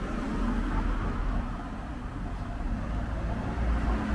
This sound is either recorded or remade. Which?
recorded